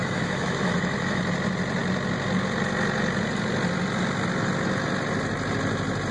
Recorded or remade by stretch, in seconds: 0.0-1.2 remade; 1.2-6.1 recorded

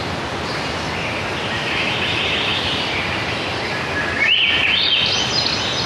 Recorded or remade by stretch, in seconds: 0.0-5.9 recorded

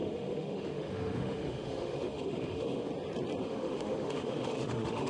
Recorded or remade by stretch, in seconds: 0.0-2.9 remade; 2.9-3.4 recorded; 3.4-5.1 remade

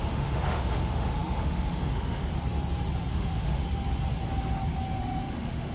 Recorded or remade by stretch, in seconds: 0.0-2.3 remade; 2.3-3.1 recorded; 3.1-3.6 remade; 3.6-5.0 recorded; 5.0-5.7 remade

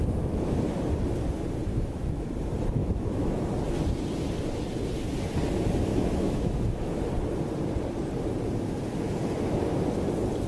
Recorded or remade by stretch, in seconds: 0.0-1.7 recorded; 1.7-2.3 remade; 2.3-2.8 recorded; 2.8-3.4 remade; 3.4-5.9 recorded; 5.9-7.0 remade; 7.0-10.5 recorded

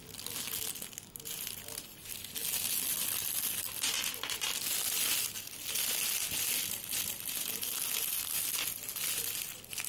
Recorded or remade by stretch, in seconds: 0.0-9.9 recorded

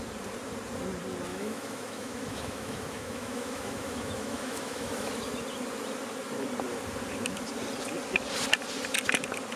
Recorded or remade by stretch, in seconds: 0.0-1.3 recorded; 1.3-5.1 remade; 5.1-9.6 recorded

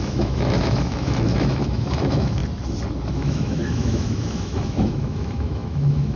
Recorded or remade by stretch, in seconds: 0.0-2.4 remade; 2.4-3.1 recorded; 3.1-6.2 remade